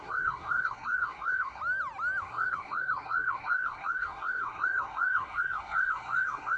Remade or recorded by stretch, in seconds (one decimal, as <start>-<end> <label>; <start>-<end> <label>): 0.0-1.6 remade; 1.6-2.2 recorded; 2.2-6.6 remade